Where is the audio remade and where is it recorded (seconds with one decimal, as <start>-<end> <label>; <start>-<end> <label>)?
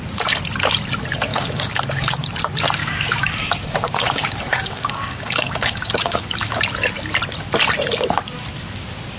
0.0-1.3 recorded; 1.3-2.3 remade; 2.3-2.8 recorded; 2.8-6.5 remade; 6.5-9.2 recorded